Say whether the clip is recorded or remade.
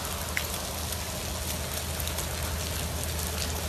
recorded